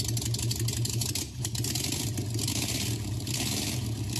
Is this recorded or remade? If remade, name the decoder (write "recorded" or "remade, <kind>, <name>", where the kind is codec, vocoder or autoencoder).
recorded